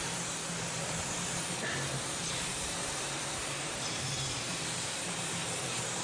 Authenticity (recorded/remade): remade